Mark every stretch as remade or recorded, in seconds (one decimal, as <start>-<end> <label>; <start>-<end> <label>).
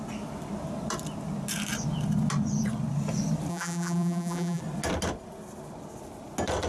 0.0-3.5 recorded; 3.5-4.6 remade; 4.6-6.7 recorded